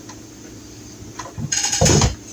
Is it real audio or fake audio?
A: real